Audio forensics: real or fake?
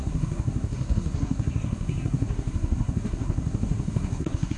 fake